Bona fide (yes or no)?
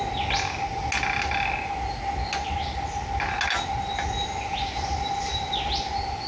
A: yes